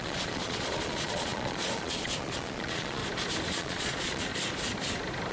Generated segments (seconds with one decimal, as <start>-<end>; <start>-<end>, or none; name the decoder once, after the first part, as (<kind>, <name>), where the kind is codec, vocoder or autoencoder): 0.0-3.0 (vocoder, Vocos); 3.5-4.3